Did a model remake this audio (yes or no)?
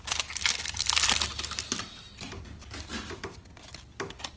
no